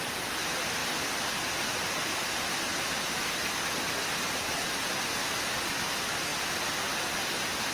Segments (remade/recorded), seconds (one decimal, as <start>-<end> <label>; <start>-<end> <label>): 0.0-7.7 recorded